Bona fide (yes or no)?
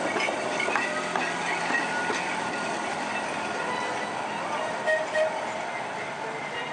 yes